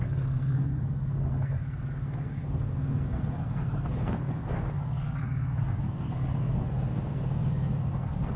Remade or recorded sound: remade